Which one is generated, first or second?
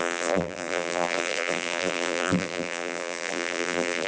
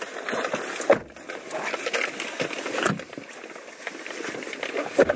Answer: first